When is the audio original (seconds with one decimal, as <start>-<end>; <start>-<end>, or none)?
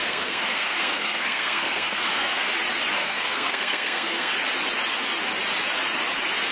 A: 2.5-3.0; 4.3-6.5